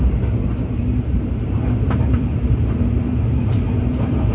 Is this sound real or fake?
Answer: fake